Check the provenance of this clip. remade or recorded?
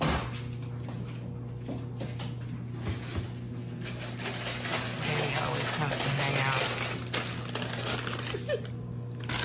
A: recorded